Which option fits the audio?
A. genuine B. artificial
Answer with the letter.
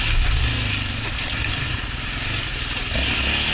A